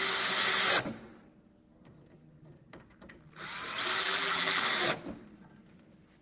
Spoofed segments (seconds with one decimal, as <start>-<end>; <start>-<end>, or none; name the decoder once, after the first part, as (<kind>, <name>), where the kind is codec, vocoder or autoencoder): 4.0-4.6 (vocoder, BigVGAN v2)